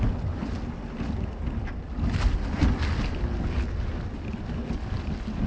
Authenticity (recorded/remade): recorded